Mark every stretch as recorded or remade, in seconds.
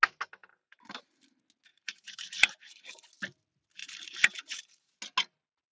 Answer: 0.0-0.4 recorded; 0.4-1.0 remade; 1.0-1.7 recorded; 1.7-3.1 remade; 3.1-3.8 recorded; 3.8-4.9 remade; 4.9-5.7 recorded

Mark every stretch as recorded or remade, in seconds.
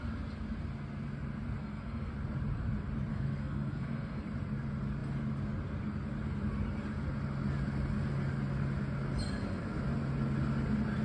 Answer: 0.0-1.6 recorded; 1.6-2.1 remade; 2.1-3.1 recorded; 3.1-4.2 remade; 4.2-11.0 recorded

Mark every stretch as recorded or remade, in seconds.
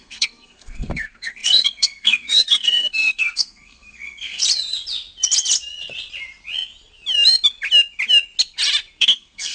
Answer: 0.0-4.4 remade; 4.4-9.0 recorded; 9.0-9.5 remade